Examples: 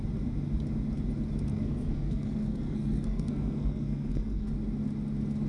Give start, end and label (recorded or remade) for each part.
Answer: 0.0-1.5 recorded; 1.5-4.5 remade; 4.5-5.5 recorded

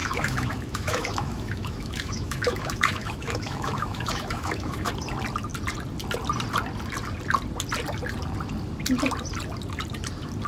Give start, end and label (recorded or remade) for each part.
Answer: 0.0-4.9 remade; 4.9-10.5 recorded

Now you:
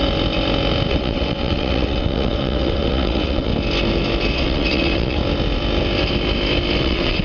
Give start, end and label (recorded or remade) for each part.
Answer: 0.0-0.9 recorded; 0.9-3.5 remade; 3.5-4.3 recorded; 4.3-5.2 remade; 5.2-6.8 recorded; 6.8-7.2 remade

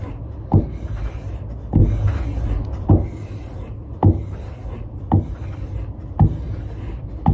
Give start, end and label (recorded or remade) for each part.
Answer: 0.0-7.3 recorded

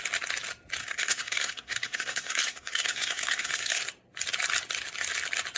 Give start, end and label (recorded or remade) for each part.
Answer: 0.0-0.8 recorded; 0.8-3.8 remade; 3.8-5.6 recorded